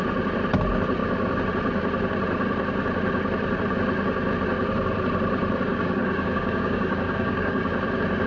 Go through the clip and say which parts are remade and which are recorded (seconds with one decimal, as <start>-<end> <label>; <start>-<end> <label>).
0.0-5.7 recorded; 5.7-7.6 remade; 7.6-8.3 recorded